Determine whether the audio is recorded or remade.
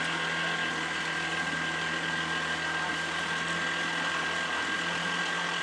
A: recorded